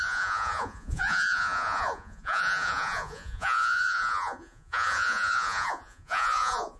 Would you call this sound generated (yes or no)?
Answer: yes